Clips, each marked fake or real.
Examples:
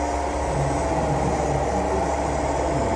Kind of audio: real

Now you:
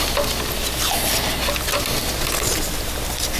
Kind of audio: real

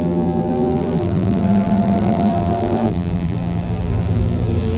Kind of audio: fake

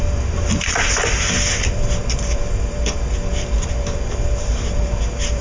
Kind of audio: fake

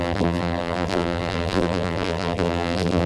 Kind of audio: fake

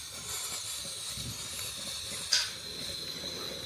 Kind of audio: real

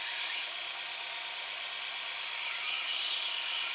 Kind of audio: real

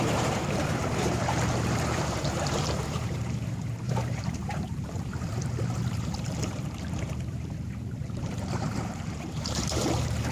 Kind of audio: fake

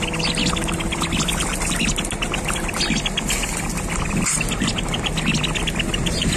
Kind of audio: real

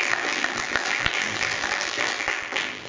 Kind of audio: fake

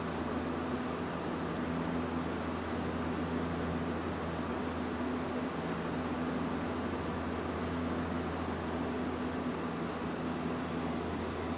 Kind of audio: real